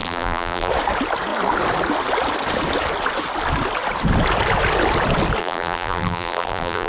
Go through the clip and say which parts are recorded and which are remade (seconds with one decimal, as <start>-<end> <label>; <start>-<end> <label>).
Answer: 0.0-0.7 remade; 0.7-5.4 recorded; 5.4-6.9 remade